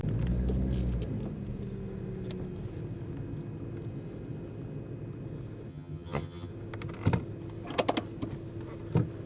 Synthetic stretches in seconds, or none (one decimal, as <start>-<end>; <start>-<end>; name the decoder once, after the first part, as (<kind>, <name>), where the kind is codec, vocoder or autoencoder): 5.7-6.5 (vocoder, HiFi-GAN)